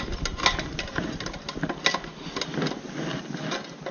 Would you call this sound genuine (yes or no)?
yes